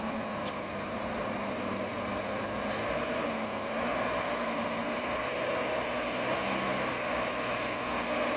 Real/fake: real